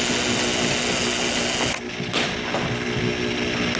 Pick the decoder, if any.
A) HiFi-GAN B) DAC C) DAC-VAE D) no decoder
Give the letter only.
D